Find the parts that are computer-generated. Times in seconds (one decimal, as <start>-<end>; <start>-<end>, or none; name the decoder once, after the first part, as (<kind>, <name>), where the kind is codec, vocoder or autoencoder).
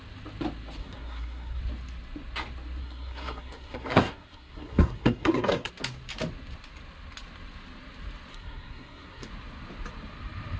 0.8-1.6 (codec, SNAC); 2.8-5.7; 8.3-9.3